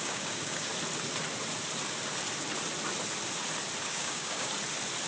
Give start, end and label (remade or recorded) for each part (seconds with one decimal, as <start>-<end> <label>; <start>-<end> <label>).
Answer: 0.0-0.7 remade; 0.7-3.8 recorded; 3.8-4.5 remade; 4.5-5.1 recorded